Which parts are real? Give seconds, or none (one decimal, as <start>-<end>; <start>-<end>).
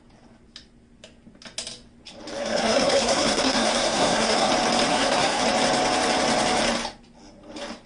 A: 0.0-2.4; 4.5-4.9; 5.4-7.9